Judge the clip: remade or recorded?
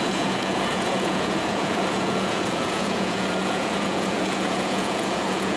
remade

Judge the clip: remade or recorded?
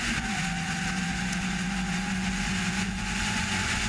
remade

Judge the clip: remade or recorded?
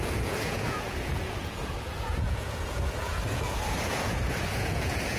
remade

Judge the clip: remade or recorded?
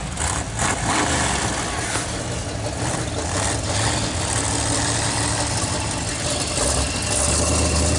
recorded